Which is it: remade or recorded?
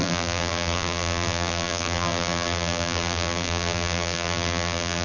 remade